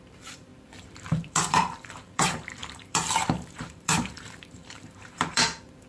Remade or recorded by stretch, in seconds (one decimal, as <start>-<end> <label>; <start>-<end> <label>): 0.0-0.5 remade; 0.5-1.2 recorded; 1.2-5.9 remade